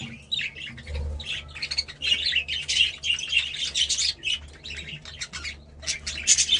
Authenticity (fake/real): real